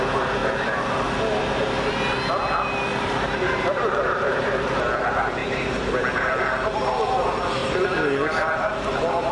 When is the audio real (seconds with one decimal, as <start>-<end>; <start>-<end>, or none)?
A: 0.0-2.9; 4.9-5.4; 5.9-9.3